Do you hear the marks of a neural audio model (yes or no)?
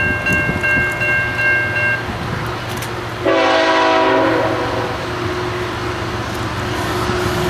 no